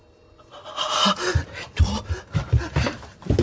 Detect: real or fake real